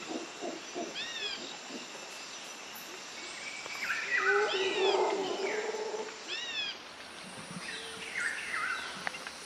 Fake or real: real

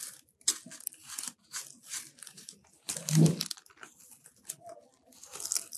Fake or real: real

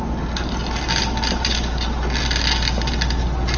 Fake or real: real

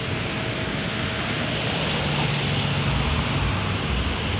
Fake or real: real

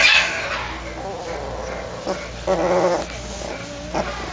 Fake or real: real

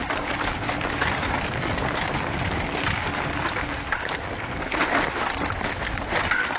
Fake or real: real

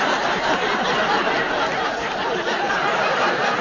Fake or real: real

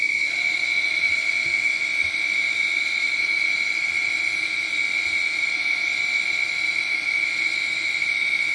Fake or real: real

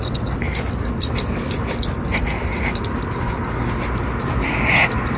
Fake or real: real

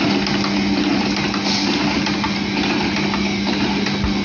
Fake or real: real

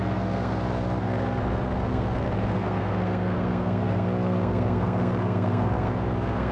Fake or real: fake